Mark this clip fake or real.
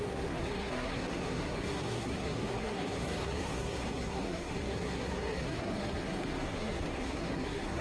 fake